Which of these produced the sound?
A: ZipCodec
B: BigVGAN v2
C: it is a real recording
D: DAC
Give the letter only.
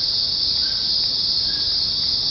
C